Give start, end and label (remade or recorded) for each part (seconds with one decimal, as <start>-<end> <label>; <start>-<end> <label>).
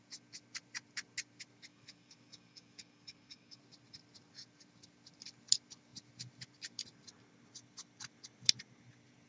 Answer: 0.0-1.7 recorded; 1.7-3.6 remade; 3.6-9.3 recorded